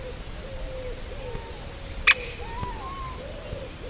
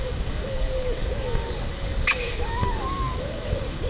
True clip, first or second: first